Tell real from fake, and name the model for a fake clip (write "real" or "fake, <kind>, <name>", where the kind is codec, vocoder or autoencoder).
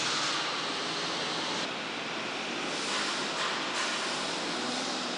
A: fake, vocoder, BigVGAN v2